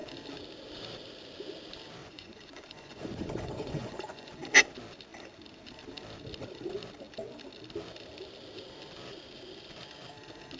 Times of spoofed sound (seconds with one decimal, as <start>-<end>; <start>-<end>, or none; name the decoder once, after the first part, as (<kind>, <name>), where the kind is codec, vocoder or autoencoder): 2.0-4.3 (vocoder, Vocos)